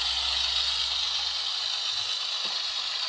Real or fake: real